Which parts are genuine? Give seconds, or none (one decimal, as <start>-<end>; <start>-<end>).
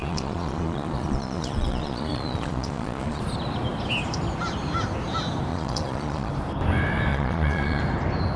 3.2-5.5; 6.3-7.1; 7.8-8.4